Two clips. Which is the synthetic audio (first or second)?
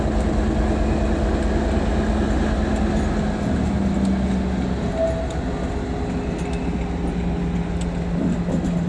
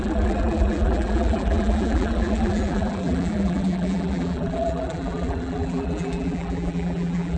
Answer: second